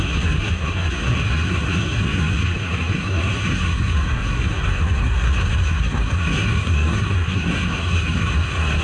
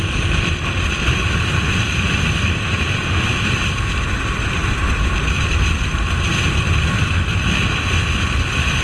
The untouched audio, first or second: second